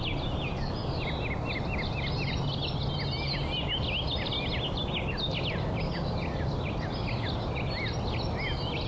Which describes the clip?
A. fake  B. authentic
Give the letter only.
B